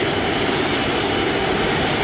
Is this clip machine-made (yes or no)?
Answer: no